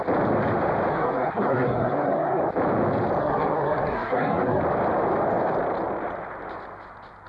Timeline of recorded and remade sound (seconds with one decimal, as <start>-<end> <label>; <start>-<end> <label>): 0.0-0.9 recorded; 0.9-2.4 remade; 2.4-3.2 recorded; 3.2-4.6 remade; 4.6-7.3 recorded